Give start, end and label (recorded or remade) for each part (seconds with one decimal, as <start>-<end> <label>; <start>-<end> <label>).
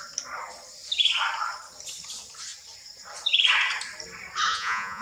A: 0.0-4.5 recorded; 4.5-5.0 remade